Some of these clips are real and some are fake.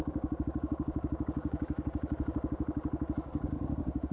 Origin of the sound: fake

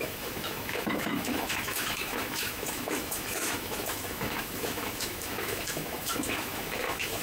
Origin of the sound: fake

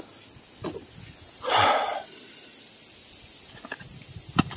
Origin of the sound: real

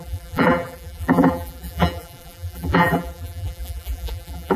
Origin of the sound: fake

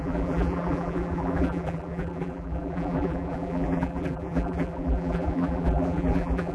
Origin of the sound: fake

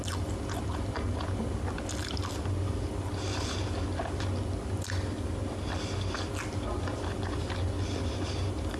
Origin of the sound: real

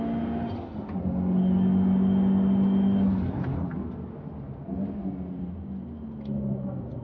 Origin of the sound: real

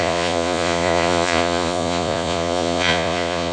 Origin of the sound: fake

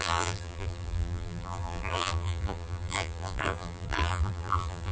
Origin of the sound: fake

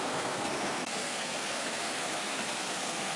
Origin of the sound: fake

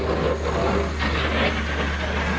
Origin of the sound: real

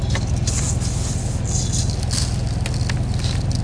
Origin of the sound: real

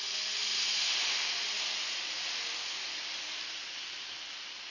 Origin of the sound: real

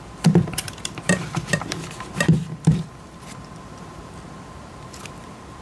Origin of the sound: fake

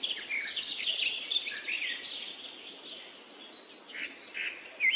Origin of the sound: real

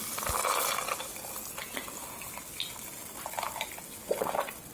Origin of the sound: real